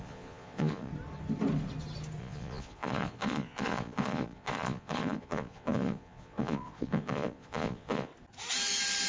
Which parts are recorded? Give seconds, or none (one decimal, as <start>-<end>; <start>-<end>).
0.9-2.2; 8.1-9.1

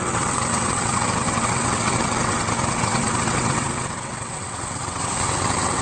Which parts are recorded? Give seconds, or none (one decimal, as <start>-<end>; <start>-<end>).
none

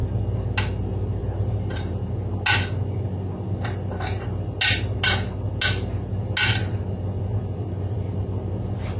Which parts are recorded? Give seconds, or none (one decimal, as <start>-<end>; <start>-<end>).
0.0-1.2; 2.1-9.0

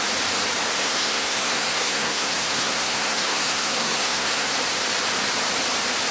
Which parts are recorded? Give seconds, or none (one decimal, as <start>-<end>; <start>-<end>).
0.0-0.8; 4.5-6.1

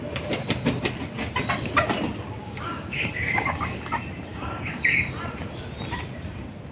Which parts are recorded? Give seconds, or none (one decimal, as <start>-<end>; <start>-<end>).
0.0-2.4; 3.9-4.3; 5.1-6.7

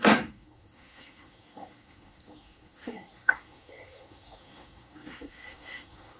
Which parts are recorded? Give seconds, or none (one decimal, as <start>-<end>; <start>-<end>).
none

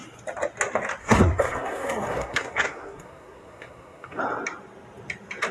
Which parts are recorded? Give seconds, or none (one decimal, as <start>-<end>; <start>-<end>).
0.0-1.0; 4.2-5.5